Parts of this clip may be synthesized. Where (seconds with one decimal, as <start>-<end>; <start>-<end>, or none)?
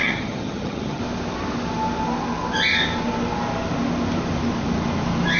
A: 0.0-1.0